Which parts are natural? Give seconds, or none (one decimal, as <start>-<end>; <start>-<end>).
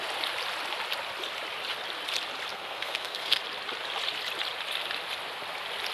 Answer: 0.0-2.5; 3.4-5.9